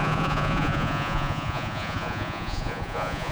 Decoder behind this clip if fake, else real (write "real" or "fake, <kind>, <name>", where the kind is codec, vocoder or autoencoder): fake, vocoder, Vocos